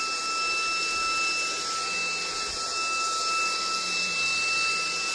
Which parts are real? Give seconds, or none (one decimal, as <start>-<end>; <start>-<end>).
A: 0.0-5.1